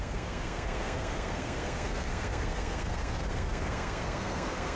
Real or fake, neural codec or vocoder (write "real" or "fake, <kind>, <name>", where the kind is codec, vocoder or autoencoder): fake, codec, SNAC